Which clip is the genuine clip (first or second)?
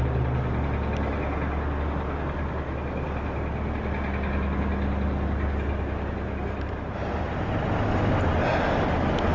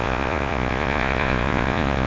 first